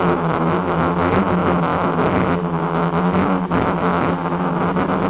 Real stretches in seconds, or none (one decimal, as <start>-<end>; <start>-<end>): 0.0-5.1